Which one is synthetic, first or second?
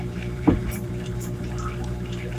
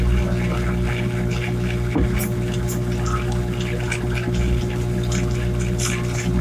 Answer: first